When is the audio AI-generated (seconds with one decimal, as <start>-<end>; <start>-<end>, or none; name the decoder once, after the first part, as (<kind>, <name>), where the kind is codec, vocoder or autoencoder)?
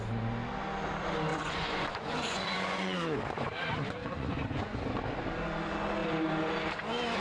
1.3-3.2 (vocoder, Vocos); 4.0-4.8